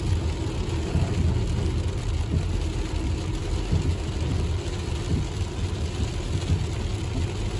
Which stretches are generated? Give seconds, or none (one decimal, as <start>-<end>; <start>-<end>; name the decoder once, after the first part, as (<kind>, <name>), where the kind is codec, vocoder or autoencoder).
none